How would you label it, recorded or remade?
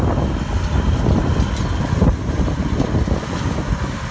recorded